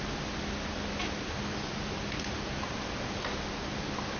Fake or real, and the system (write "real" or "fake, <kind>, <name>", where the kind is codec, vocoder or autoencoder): real